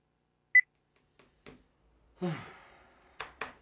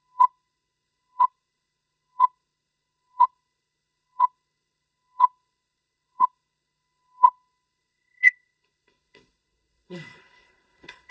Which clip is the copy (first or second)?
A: second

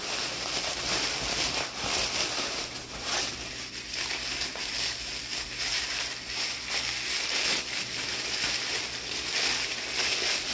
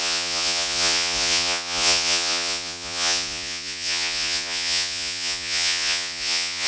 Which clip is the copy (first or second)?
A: second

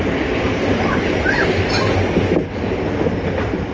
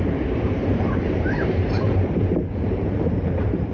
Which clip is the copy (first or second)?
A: second